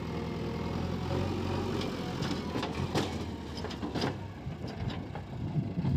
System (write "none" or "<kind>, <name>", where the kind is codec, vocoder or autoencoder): none